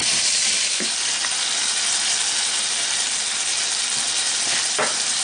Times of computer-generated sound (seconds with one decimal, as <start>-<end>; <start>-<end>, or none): none